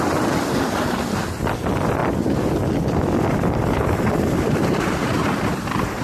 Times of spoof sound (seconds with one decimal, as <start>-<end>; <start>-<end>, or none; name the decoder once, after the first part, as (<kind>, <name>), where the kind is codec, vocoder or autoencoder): none